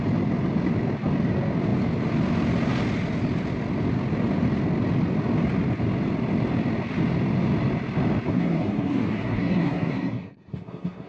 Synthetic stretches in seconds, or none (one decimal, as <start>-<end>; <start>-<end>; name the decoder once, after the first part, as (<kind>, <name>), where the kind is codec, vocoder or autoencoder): 8.3-11.1 (codec, SNAC)